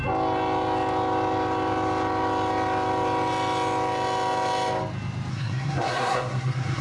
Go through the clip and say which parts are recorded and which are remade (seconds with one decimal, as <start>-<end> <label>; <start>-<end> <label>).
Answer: 0.0-5.3 recorded; 5.3-6.8 remade